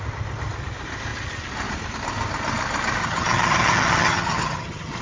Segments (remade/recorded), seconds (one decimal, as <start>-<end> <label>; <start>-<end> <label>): 0.0-3.0 recorded; 3.0-5.0 remade